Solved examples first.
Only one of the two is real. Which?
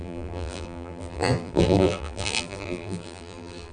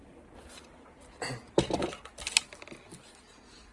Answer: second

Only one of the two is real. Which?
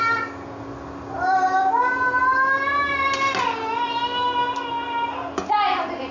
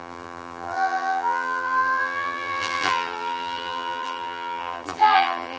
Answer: first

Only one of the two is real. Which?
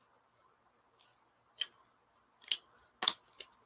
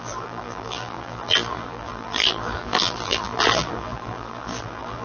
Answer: first